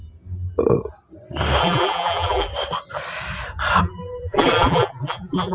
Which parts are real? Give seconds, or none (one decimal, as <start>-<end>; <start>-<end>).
0.0-1.6; 2.5-3.8